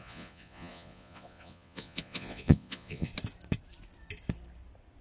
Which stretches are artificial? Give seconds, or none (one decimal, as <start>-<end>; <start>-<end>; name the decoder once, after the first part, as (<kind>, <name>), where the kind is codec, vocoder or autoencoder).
0.0-3.1 (vocoder, Vocos)